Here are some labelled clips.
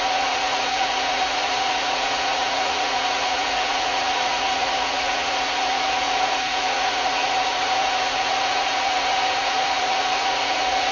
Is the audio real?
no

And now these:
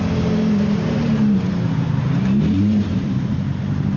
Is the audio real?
no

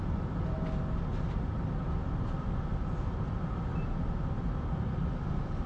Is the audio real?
yes